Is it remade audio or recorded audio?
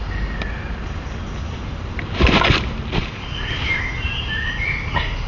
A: recorded